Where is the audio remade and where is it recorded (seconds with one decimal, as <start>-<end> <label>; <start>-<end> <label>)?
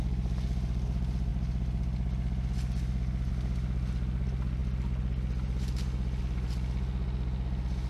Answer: 0.0-7.9 recorded